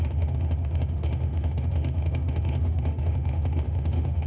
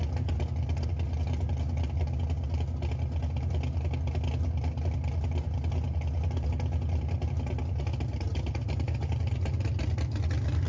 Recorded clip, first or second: second